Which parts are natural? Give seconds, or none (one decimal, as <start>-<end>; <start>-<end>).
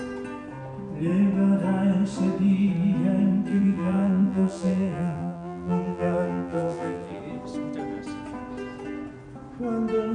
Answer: 0.0-3.5; 7.2-10.1